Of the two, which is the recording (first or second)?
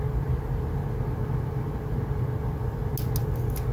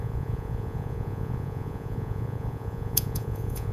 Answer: first